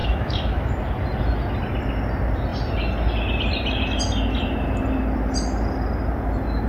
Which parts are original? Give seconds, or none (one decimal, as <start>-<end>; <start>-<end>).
0.7-6.7